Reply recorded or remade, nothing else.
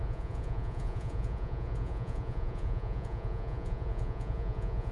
remade